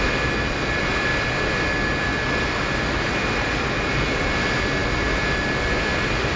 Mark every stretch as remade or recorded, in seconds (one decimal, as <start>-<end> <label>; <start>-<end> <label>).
0.0-6.4 recorded